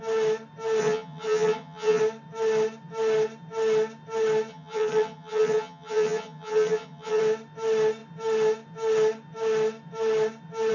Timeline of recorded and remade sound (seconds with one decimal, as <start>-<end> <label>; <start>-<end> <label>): 0.0-0.8 recorded; 0.8-2.0 remade; 2.0-4.5 recorded; 4.5-7.2 remade; 7.2-10.7 recorded